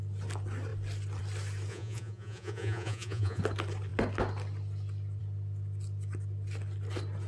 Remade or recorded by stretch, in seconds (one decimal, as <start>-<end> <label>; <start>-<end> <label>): 0.0-1.7 recorded; 1.7-3.4 remade; 3.4-7.3 recorded